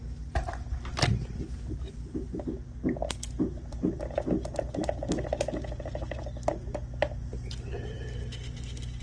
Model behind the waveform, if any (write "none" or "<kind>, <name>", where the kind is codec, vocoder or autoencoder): none